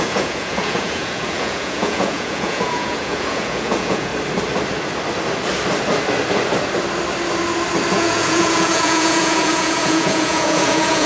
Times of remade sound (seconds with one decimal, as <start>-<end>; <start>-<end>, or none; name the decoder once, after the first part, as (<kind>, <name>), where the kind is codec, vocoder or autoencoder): 0.0-4.1 (vocoder, Vocos); 7.9-11.1